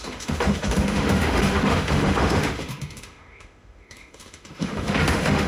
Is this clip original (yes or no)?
no